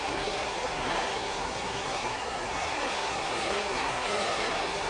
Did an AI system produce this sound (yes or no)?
yes